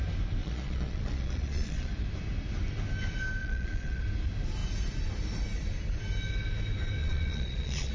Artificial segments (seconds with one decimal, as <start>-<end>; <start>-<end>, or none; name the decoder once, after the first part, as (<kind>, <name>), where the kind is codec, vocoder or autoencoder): 0.4-1.9 (vocoder, Vocos); 3.4-4.0; 7.0-7.9